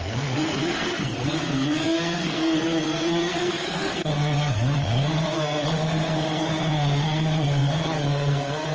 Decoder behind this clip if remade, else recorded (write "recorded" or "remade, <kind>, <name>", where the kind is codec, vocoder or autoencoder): remade, codec, SNAC